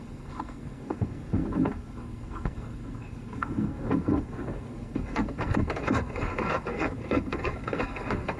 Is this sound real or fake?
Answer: fake